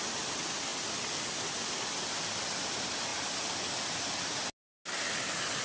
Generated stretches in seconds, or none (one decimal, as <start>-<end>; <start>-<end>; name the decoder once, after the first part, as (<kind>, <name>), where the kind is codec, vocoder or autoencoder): none